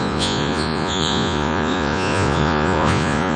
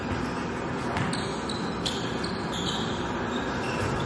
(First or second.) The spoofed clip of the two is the first